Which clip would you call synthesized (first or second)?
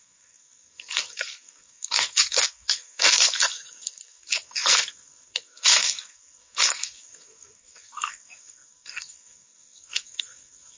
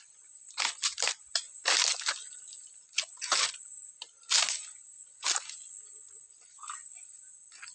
first